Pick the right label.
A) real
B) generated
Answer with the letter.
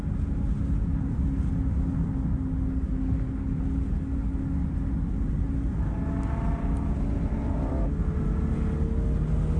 A